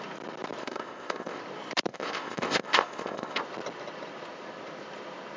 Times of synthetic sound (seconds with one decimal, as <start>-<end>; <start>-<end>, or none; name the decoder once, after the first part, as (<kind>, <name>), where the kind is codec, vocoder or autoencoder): 0.6-1.4 (codec, ZipCodec); 1.9-3.4